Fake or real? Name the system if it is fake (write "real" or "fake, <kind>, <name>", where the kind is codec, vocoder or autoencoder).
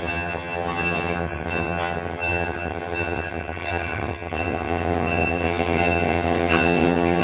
fake, vocoder, HiFi-GAN